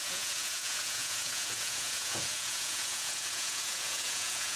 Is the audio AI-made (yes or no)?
yes